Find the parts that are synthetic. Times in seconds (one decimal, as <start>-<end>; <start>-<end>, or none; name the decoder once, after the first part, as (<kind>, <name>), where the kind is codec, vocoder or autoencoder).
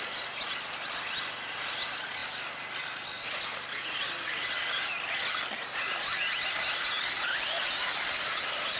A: none